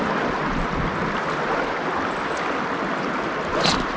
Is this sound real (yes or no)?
yes